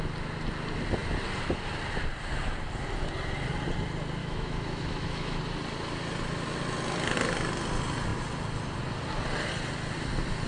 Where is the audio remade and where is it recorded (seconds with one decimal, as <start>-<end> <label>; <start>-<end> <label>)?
0.0-4.2 recorded; 4.2-5.4 remade; 5.4-10.5 recorded